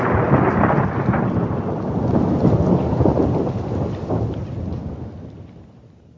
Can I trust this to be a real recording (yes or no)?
yes